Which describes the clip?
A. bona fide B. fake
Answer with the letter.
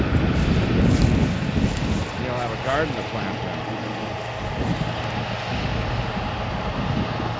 A